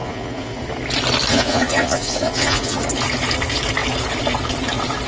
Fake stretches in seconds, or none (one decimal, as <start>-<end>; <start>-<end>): 0.0-0.6; 1.3-2.8